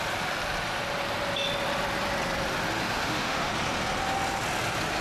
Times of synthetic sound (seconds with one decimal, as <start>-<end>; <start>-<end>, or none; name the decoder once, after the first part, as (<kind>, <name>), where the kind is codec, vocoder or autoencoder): 2.8-3.5 (autoencoder, DAC-VAE)